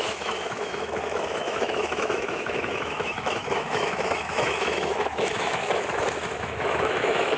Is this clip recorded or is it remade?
remade